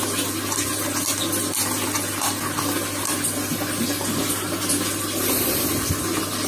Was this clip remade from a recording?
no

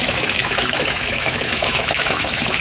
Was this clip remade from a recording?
yes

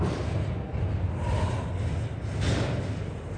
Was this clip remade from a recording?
no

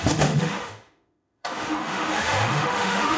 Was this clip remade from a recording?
yes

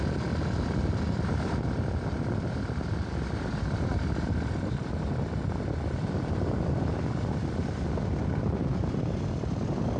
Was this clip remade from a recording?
no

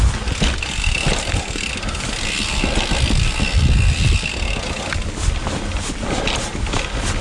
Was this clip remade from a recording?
no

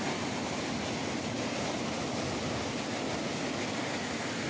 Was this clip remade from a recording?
no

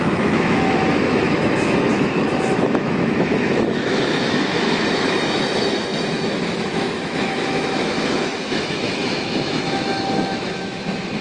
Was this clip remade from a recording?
yes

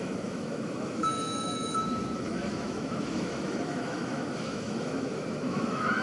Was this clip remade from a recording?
yes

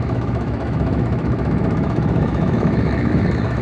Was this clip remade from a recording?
yes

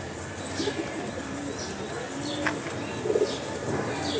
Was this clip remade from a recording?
no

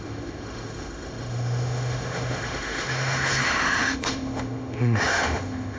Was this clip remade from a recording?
yes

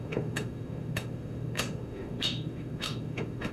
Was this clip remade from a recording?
yes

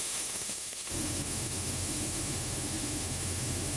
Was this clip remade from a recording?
yes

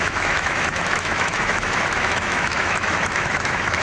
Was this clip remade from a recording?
yes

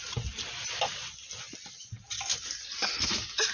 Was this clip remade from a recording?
no